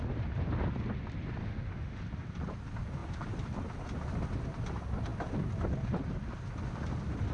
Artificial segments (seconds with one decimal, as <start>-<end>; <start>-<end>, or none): 1.4-2.0